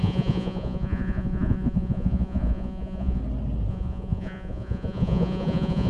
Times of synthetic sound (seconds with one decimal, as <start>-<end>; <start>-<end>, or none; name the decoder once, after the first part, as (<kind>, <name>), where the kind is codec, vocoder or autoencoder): 0.0-3.2 (vocoder, Vocos); 3.7-5.9